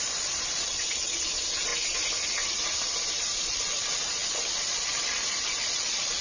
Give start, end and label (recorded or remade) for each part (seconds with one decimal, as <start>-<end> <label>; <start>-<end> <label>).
0.0-1.7 remade; 1.7-3.2 recorded; 3.2-6.2 remade